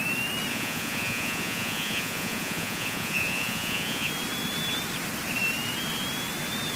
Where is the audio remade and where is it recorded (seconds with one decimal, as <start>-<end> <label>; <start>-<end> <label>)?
0.0-0.5 recorded; 0.5-4.1 remade; 4.1-6.8 recorded